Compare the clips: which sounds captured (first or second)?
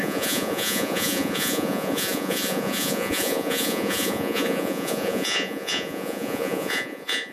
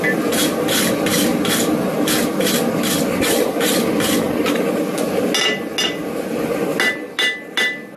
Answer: second